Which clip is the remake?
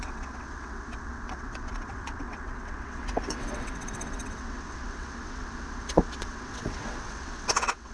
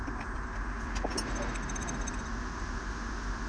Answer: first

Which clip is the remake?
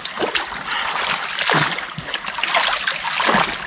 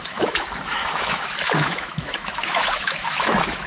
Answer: second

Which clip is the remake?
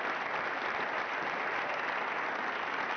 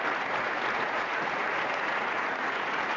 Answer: second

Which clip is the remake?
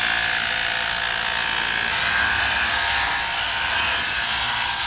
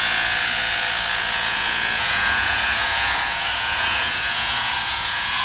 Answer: second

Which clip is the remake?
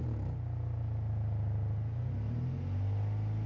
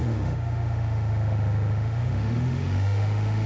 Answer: second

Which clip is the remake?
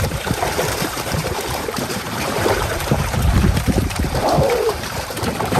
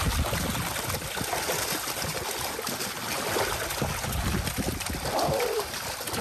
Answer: first